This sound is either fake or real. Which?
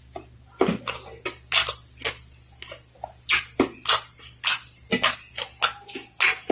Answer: real